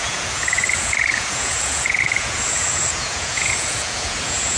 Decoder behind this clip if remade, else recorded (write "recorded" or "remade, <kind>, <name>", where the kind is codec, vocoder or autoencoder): remade, vocoder, Vocos